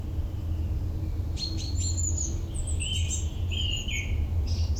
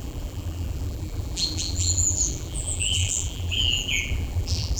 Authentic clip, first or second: first